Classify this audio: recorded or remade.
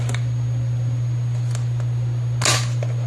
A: recorded